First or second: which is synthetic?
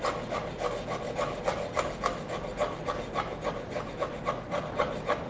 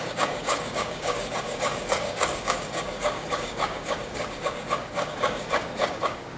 second